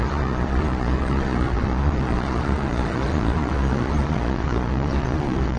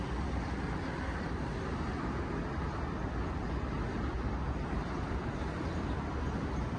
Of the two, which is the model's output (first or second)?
first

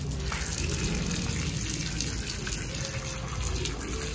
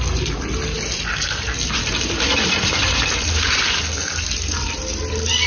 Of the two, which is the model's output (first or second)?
second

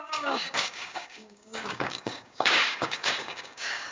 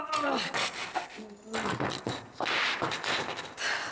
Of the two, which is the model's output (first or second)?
first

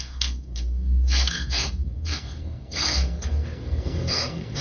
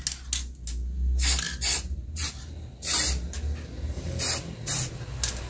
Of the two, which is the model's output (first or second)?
first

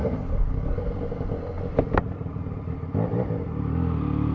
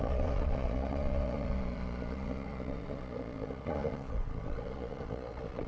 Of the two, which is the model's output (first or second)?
second